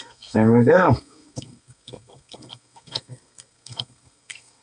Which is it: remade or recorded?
remade